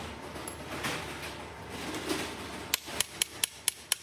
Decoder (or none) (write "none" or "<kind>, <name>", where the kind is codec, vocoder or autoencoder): none